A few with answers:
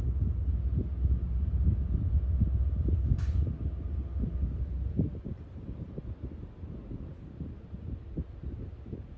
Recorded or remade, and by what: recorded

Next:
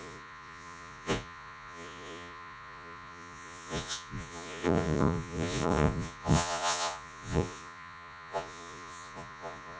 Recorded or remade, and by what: remade, vocoder, Vocos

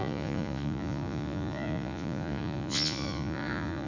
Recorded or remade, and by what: remade, vocoder, Vocos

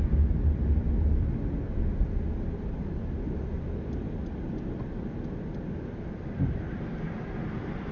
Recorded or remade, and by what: recorded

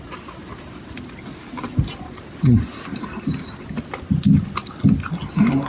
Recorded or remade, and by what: recorded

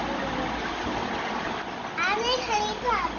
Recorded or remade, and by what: recorded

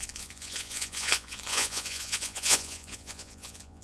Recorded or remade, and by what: remade, vocoder, Vocos